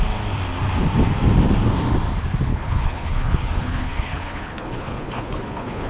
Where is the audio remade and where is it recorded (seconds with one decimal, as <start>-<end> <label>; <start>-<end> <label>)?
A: 0.0-2.5 recorded; 2.5-5.9 remade